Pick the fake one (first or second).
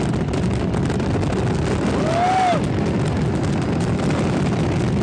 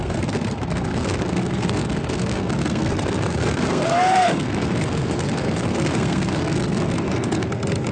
second